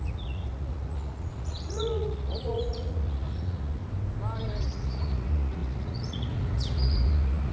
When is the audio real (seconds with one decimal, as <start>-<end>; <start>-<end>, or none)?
3.8-4.6